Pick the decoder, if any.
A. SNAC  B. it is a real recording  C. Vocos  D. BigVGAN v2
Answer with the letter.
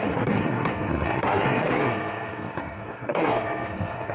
A